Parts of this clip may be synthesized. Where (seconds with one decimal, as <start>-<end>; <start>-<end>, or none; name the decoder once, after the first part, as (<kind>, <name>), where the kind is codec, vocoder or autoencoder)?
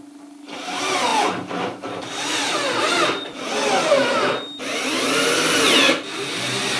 none